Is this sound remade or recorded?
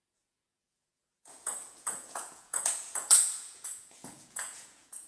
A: remade